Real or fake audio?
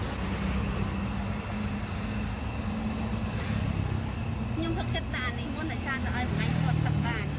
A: real